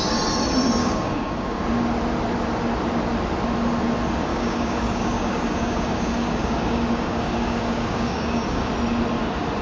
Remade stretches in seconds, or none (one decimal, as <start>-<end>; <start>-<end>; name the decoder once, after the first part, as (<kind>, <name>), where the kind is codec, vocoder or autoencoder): 0.8-1.6 (codec, DAC); 4.3-8.7